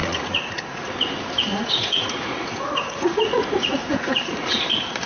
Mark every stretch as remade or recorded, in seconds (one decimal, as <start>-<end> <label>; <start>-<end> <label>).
0.0-0.9 remade; 0.9-1.5 recorded; 1.5-4.6 remade; 4.6-5.1 recorded